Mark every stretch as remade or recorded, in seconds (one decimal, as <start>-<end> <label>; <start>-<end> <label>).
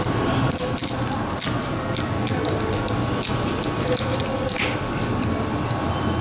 0.0-0.8 remade; 0.8-4.2 recorded; 4.2-6.2 remade